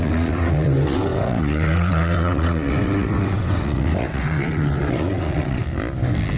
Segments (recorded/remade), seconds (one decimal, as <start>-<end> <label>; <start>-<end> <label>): 0.0-5.6 remade; 5.6-6.4 recorded